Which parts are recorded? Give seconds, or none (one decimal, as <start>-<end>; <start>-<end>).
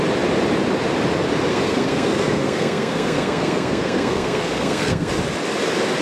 0.0-1.5; 5.1-6.0